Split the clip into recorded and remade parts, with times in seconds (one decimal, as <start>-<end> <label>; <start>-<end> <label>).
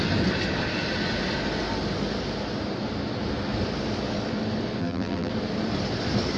0.0-4.8 recorded; 4.8-5.3 remade; 5.3-6.4 recorded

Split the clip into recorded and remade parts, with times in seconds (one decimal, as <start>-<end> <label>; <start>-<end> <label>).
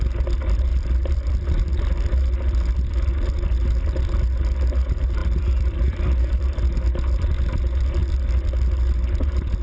0.0-0.7 recorded; 0.7-1.9 remade; 1.9-5.2 recorded; 5.2-6.6 remade; 6.6-9.6 recorded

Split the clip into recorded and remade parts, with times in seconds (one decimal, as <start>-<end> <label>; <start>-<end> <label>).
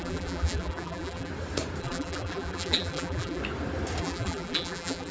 0.0-1.3 remade; 1.3-1.8 recorded; 1.8-3.4 remade; 3.4-4.0 recorded; 4.0-5.1 remade